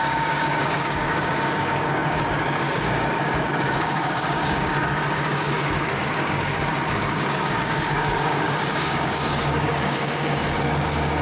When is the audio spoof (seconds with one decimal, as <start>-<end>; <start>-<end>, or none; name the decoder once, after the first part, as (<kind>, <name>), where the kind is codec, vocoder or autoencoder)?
0.0-11.2 (codec, DAC)